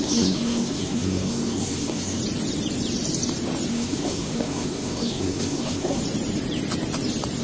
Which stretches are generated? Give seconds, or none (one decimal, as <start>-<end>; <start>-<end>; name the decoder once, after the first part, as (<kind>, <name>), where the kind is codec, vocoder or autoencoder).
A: 0.0-2.2 (codec, SNAC); 3.7-6.0